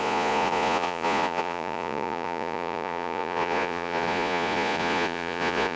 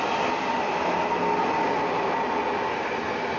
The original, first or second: second